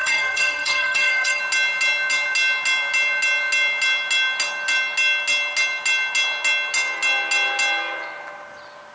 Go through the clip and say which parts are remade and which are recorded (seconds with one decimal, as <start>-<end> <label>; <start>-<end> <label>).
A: 0.0-1.4 remade; 1.4-8.9 recorded